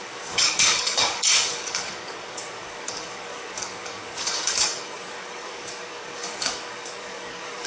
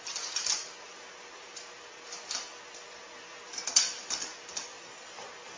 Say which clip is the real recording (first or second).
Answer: second